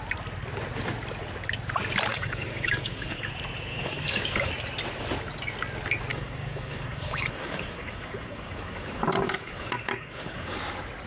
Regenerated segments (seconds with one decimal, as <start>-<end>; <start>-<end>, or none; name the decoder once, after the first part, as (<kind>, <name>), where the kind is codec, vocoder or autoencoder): 2.1-3.3 (codec, DAC); 3.7-4.5; 6.1-10.6